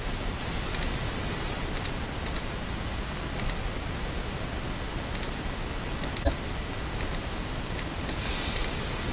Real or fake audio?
real